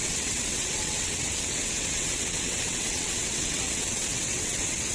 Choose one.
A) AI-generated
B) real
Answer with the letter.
A